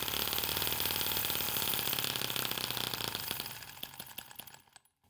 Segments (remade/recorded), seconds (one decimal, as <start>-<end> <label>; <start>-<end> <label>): 0.0-5.1 recorded